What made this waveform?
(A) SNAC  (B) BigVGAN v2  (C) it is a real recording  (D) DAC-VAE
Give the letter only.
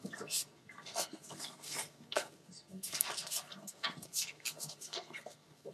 A